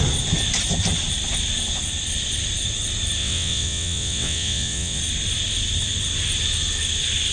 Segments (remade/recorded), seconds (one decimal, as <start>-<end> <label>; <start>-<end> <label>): 0.0-3.2 recorded; 3.2-5.0 remade; 5.0-7.3 recorded